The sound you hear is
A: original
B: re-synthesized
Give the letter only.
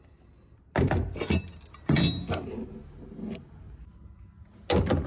A